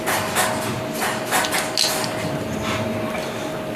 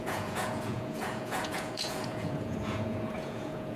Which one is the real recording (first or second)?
first